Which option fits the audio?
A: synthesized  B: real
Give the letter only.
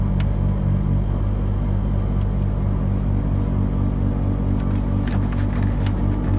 B